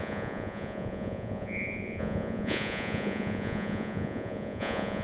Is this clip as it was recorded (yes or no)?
no